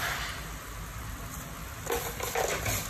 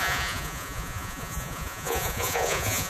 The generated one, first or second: second